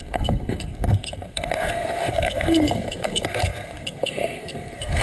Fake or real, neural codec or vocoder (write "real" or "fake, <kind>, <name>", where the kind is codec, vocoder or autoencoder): fake, codec, SNAC